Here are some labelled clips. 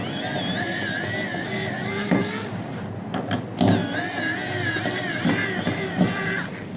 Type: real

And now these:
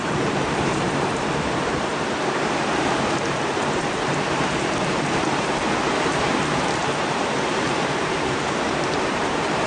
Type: fake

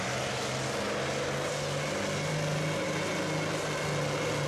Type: real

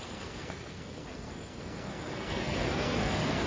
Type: fake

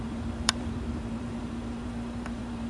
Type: fake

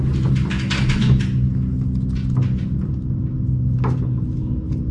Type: real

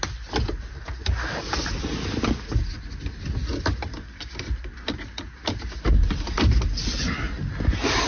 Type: real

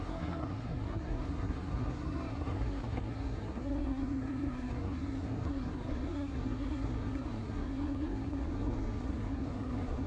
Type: fake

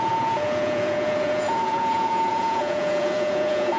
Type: fake